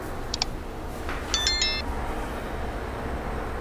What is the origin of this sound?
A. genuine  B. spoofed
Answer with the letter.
A